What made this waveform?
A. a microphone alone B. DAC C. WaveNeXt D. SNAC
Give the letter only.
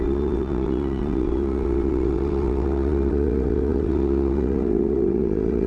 C